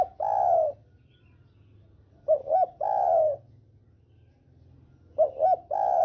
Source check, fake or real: real